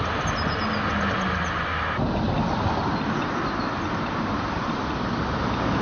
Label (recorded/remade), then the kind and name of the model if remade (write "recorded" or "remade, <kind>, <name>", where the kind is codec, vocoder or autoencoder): recorded